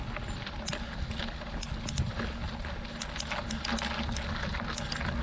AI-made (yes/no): no